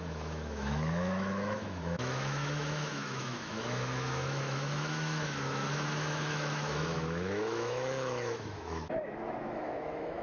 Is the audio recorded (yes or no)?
no